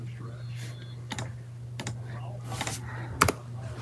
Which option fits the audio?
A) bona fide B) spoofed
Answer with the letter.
A